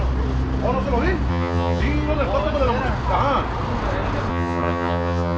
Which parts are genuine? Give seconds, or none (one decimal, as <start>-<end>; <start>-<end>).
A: 0.0-1.3; 1.8-4.3